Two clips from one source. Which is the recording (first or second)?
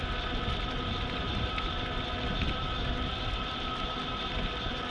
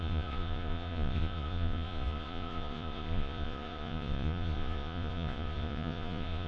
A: first